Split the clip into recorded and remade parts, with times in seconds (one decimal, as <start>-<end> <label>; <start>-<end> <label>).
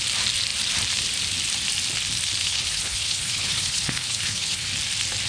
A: 0.0-2.4 recorded; 2.4-4.7 remade; 4.7-5.3 recorded